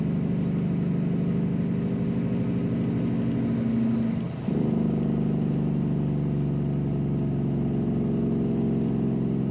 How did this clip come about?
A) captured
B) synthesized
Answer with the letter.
A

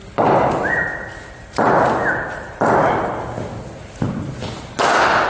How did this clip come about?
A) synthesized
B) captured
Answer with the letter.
B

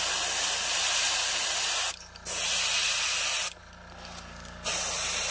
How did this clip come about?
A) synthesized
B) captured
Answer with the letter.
B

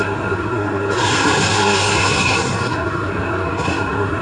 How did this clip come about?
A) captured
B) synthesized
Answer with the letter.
B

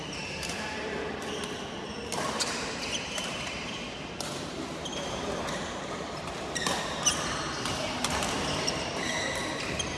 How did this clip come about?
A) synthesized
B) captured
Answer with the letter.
A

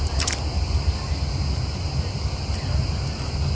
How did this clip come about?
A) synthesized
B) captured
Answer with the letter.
B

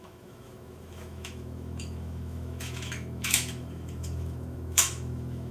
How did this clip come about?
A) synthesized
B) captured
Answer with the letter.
A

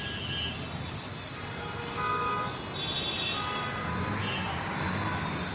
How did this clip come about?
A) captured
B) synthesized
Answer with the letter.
A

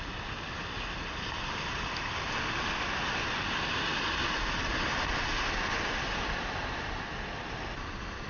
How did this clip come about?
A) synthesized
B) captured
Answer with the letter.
B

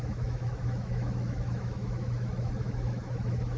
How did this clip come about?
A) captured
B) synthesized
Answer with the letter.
B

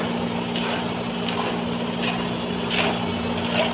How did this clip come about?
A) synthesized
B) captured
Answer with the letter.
B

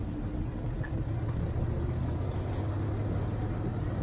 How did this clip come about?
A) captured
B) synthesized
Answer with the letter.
A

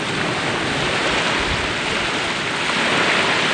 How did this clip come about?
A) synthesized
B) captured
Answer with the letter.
B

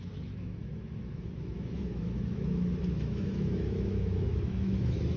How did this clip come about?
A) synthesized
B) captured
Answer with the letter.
A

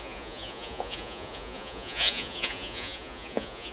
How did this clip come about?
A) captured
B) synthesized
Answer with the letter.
B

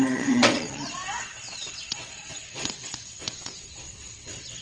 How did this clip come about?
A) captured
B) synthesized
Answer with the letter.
B